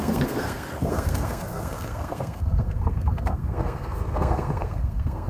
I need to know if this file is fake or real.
fake